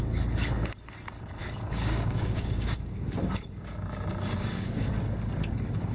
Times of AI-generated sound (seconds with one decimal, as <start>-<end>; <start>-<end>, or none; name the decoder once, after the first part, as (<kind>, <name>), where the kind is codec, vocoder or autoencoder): 1.4-4.9 (codec, DAC)